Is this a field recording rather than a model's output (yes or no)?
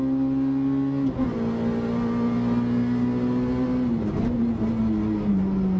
yes